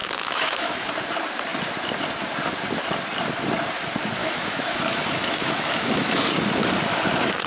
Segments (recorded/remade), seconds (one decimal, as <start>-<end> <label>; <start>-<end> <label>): 0.0-0.9 remade; 0.9-4.2 recorded; 4.2-6.2 remade; 6.2-7.5 recorded